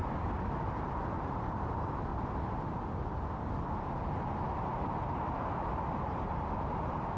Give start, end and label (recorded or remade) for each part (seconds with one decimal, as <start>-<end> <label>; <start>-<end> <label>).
0.0-1.5 recorded; 1.5-2.1 remade; 2.1-4.8 recorded; 4.8-7.2 remade